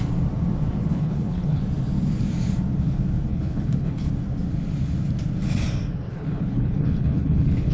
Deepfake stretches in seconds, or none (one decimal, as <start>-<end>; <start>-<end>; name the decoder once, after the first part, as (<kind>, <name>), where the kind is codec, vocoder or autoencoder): 0.9-1.6 (codec, HILCodec); 3.3-4.1; 6.1-7.7